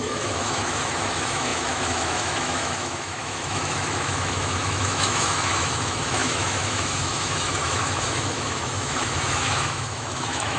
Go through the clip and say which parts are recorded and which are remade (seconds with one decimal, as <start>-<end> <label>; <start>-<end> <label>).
0.0-10.6 remade